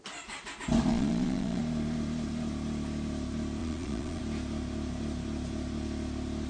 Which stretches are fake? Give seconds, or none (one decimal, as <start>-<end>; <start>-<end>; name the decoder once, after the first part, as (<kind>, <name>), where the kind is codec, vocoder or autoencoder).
0.9-1.6 (vocoder, Vocos); 3.6-4.2